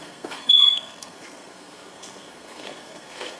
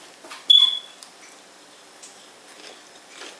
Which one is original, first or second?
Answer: second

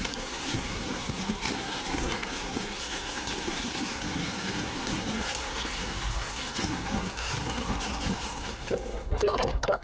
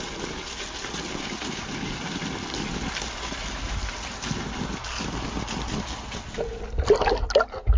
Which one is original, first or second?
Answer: second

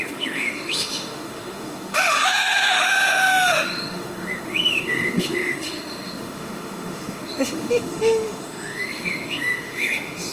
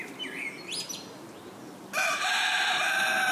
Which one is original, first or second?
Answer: second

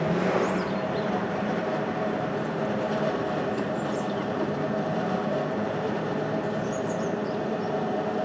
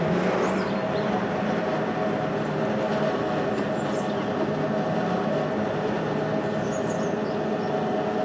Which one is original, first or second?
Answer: second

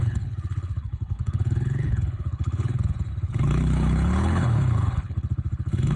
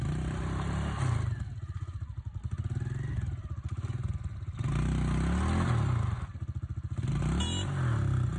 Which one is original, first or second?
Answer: second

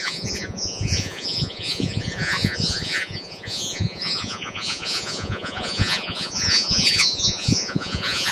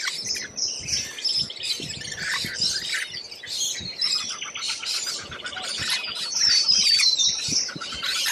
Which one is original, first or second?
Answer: second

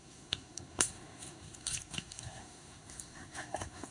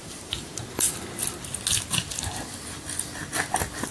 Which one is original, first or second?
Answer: second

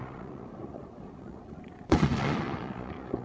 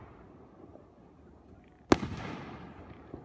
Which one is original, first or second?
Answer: second